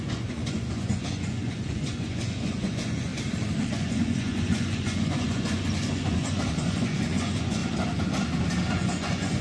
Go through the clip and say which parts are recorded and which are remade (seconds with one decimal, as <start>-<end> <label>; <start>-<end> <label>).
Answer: 0.0-3.1 remade; 3.1-3.7 recorded; 3.7-7.6 remade; 7.6-8.7 recorded; 8.7-9.4 remade